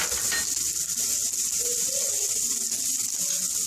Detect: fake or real real